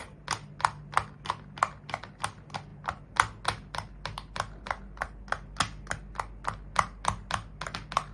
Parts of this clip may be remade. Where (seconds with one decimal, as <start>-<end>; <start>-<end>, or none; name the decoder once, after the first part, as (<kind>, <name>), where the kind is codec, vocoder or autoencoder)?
none